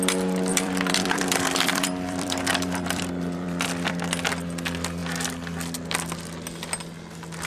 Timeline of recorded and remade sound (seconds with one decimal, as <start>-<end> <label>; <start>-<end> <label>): 0.0-0.5 recorded; 0.5-3.9 remade; 3.9-7.5 recorded